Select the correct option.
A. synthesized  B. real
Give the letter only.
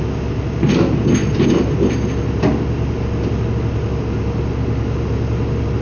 B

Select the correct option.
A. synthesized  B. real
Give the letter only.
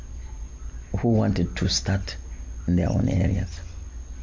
B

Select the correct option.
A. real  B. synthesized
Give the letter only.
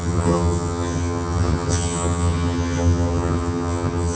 B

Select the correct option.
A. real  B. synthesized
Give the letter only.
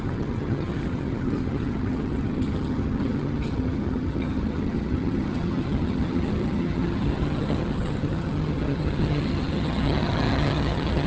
B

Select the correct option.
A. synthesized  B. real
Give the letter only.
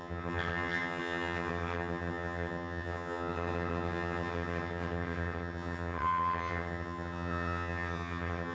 A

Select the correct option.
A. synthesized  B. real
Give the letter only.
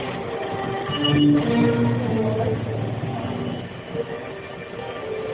B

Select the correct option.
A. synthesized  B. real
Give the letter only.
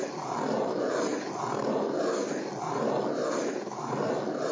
B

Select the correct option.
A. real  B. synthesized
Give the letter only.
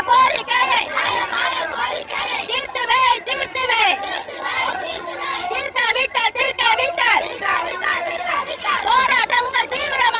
B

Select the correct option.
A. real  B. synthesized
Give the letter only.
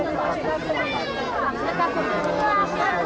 A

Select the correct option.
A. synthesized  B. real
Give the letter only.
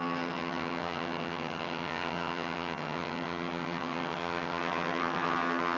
A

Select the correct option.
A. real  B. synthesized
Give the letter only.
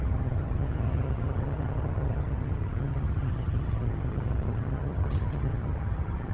B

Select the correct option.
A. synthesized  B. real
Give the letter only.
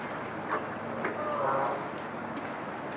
B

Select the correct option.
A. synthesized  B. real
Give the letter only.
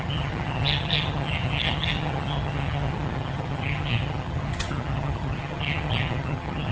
A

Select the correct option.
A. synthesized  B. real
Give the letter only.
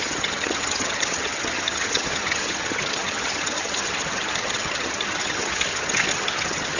A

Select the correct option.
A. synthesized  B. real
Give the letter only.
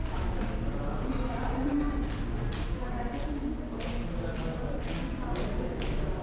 B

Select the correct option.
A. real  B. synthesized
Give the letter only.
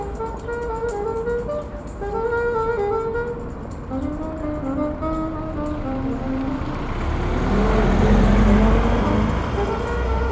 A